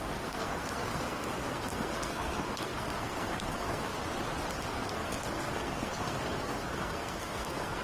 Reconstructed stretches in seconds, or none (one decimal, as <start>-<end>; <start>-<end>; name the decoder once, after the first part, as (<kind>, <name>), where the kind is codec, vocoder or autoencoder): 0.0-3.9 (codec, SNAC); 4.5-7.8